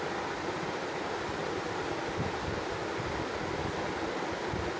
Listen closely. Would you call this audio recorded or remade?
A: recorded